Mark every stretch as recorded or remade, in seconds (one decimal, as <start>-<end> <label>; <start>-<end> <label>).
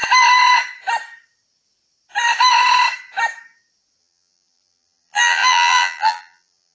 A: 0.0-4.0 recorded; 4.0-6.7 remade